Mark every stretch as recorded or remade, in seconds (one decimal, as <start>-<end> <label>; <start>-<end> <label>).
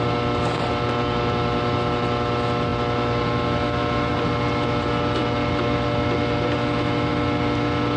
0.0-8.0 recorded